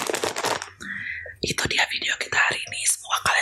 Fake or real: real